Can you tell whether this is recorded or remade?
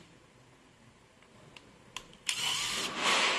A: recorded